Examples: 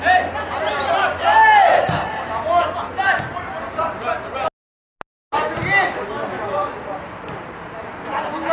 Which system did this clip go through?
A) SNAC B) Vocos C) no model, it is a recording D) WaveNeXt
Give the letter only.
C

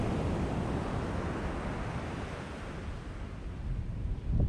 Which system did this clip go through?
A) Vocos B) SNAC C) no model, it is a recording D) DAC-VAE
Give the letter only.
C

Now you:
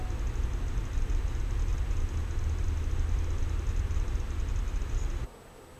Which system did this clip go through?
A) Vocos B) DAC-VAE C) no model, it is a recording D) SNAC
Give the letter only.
C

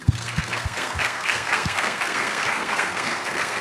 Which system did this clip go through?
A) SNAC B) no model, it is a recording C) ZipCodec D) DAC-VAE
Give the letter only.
A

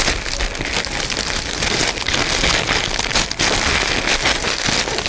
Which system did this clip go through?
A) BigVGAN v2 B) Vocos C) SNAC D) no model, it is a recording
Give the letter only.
D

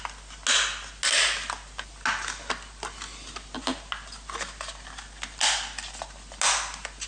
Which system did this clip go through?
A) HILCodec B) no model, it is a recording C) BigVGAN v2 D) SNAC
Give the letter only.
B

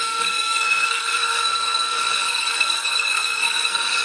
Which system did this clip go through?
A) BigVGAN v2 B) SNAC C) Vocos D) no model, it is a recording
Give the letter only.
B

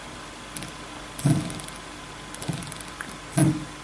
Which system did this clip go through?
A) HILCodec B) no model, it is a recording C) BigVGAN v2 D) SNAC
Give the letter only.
B